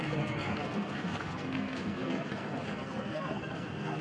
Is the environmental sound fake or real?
fake